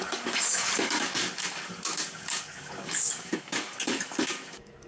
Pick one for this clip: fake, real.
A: fake